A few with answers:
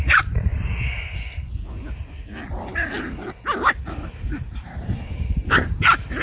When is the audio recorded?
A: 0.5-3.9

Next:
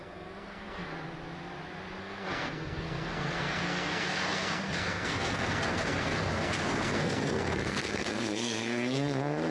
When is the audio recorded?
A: 0.9-2.0

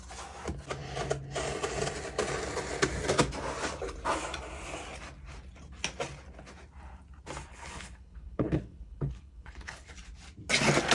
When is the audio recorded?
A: 0.0-7.5; 9.9-10.9

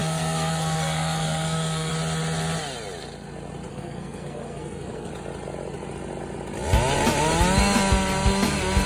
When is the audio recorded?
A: 1.9-3.7; 5.1-8.9

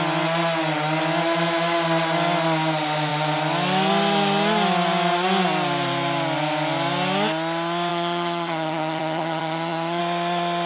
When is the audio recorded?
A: 0.0-7.9; 10.0-10.7

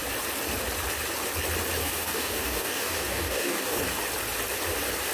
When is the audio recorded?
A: 0.0-1.8; 3.8-5.1

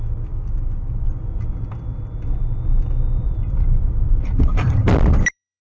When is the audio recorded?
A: 0.0-3.2